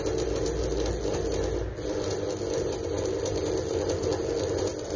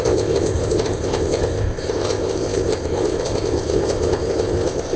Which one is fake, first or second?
second